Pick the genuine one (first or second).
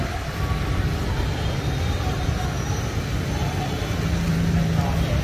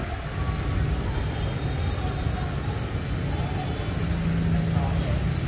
second